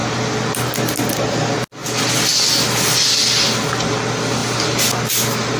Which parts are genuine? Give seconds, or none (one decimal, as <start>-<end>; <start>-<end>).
0.0-5.6